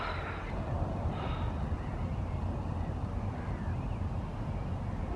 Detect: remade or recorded recorded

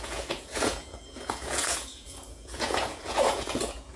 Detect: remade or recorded remade